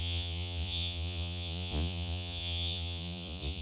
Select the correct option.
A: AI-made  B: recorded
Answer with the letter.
A